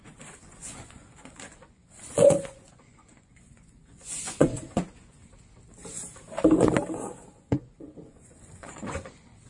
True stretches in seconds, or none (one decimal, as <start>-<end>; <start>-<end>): 5.2-7.3